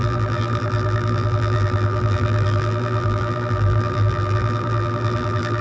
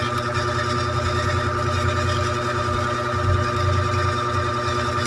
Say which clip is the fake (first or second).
first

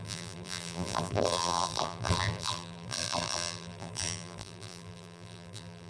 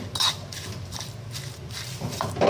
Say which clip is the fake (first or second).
first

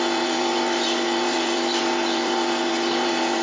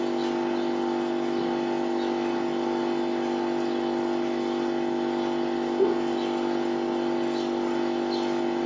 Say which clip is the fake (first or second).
first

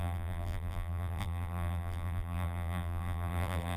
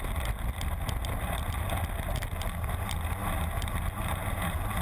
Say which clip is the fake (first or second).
first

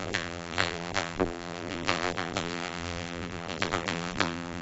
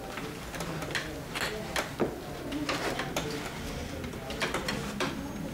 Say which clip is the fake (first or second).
first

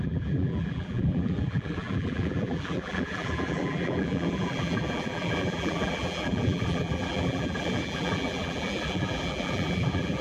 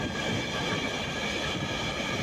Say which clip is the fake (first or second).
first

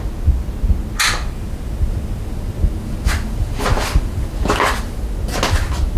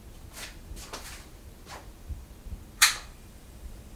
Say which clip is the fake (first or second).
second